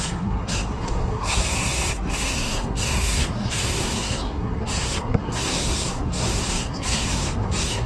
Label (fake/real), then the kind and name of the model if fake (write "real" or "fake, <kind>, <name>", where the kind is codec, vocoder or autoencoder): fake, codec, SNAC